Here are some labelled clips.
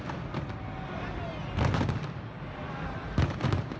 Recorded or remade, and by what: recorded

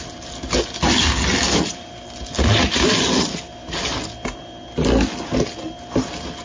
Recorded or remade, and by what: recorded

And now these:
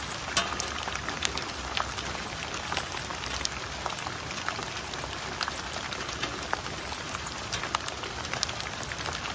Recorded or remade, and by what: recorded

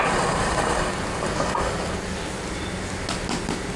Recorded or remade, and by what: recorded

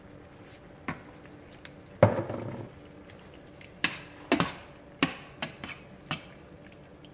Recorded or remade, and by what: recorded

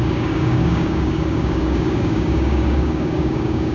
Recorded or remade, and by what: remade, codec, DAC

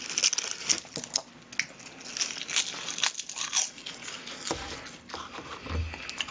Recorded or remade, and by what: recorded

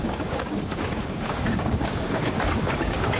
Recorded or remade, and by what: remade, codec, DAC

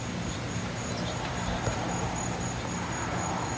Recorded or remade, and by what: recorded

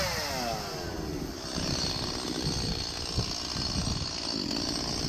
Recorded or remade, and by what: recorded